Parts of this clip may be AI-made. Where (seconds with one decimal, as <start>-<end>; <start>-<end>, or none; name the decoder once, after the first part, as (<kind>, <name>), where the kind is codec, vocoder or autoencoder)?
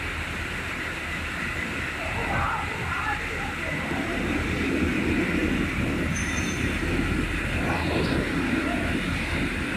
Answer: 5.4-6.6 (vocoder, BigVGAN v2)